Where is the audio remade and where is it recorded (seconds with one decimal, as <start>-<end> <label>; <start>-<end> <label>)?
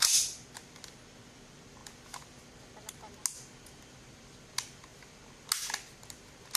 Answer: 0.0-6.6 recorded